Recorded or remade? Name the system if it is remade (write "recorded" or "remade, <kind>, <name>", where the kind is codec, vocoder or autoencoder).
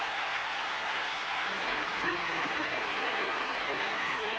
remade, codec, SNAC